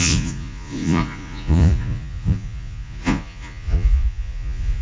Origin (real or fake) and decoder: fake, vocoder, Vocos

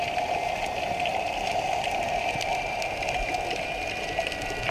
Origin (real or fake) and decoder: real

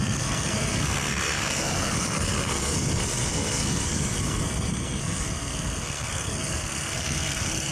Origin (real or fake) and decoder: fake, codec, SNAC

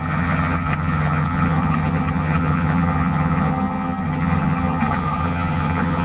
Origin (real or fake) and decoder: fake, vocoder, HiFi-GAN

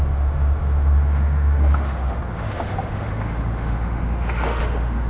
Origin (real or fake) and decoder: fake, autoencoder, DAC-VAE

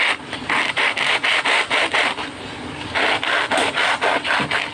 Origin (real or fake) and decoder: real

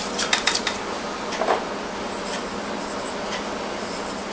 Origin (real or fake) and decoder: real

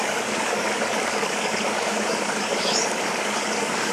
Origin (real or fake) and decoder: fake, codec, DAC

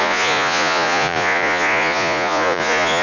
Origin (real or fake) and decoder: fake, vocoder, Vocos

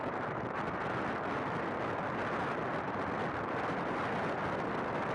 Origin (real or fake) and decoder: real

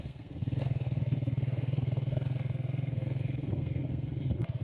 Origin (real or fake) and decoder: fake, codec, SNAC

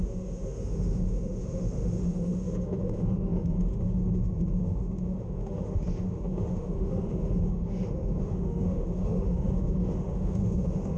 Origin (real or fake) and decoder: fake, autoencoder, DAC-VAE